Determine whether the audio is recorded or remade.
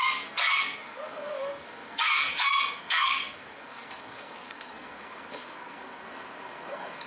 remade